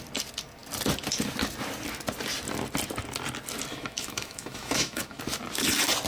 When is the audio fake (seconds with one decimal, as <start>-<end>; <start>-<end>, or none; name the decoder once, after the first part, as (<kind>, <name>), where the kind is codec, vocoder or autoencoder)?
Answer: 3.7-5.2 (autoencoder, DAC-VAE)